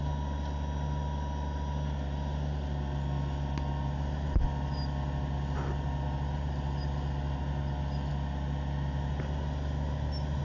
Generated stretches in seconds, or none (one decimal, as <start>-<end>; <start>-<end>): none